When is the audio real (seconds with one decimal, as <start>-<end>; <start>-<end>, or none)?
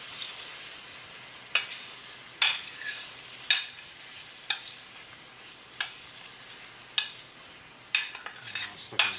0.0-9.2